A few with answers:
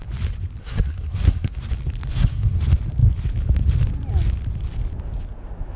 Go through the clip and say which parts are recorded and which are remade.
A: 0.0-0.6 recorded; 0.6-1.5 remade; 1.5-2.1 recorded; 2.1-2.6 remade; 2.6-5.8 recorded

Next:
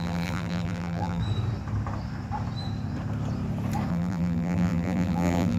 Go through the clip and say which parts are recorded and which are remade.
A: 0.0-1.2 remade; 1.2-3.9 recorded; 3.9-5.6 remade

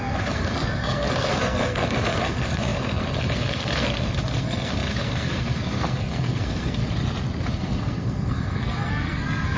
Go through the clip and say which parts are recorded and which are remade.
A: 0.0-6.8 remade; 6.8-7.5 recorded; 7.5-9.6 remade

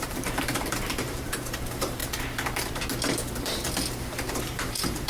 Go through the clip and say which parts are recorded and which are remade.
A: 0.0-2.0 remade; 2.0-4.4 recorded; 4.4-5.1 remade

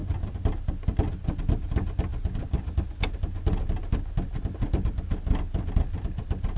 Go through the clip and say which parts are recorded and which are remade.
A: 0.0-6.6 recorded